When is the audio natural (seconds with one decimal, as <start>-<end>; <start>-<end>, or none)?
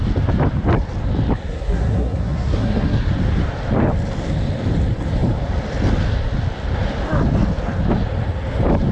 0.0-1.4; 3.1-8.9